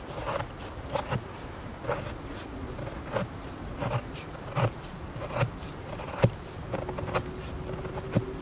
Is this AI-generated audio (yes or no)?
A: no